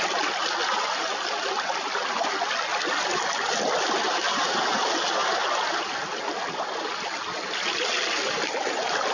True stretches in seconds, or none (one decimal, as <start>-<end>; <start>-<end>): 0.0-9.1